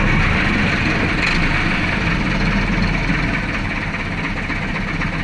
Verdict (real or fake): real